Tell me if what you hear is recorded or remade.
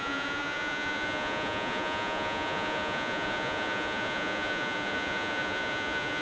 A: remade